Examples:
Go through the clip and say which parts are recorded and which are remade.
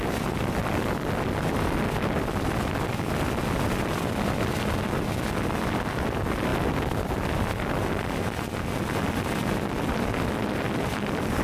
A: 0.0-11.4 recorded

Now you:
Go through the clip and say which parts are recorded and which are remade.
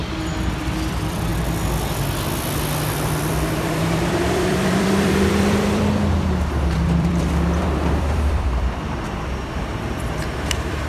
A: 0.0-0.6 recorded; 0.6-1.3 remade; 1.3-2.8 recorded; 2.8-10.9 remade